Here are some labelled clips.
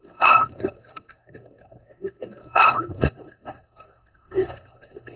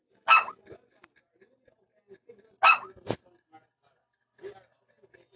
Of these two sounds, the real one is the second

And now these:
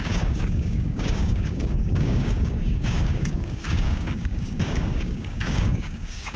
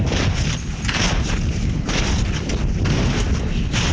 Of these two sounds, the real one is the second